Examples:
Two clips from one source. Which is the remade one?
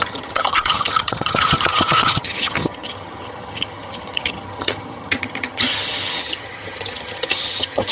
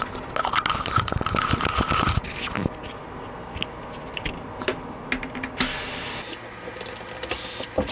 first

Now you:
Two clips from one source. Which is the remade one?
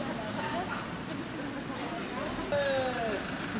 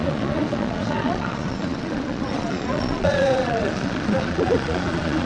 second